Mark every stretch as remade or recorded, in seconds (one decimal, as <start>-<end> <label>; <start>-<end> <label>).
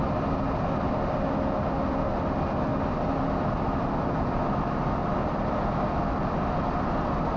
0.0-7.4 recorded